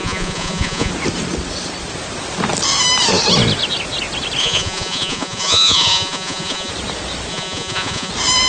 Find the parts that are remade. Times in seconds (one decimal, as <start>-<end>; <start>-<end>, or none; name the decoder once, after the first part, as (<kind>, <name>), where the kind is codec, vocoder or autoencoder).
0.0-0.9 (vocoder, Vocos); 4.4-6.7; 7.3-8.1